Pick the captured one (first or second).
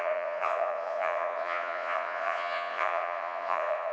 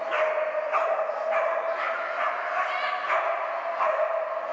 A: second